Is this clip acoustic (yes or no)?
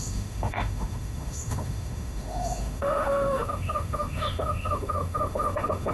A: no